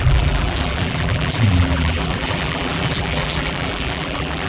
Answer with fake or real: fake